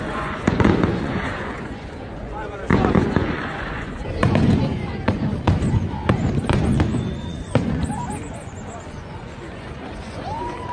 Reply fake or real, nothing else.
fake